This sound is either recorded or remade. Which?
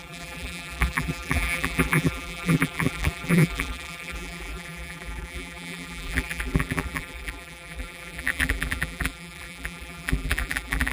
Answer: remade